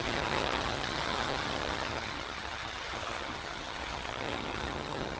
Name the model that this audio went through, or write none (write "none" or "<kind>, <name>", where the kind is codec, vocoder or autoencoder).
vocoder, HiFi-GAN